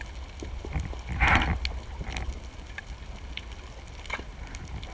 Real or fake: real